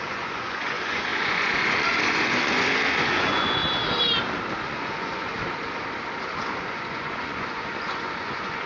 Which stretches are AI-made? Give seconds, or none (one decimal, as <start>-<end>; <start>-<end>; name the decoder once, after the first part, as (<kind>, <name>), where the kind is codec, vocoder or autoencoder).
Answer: 0.0-3.6 (vocoder, Vocos); 4.6-5.3; 6.6-8.7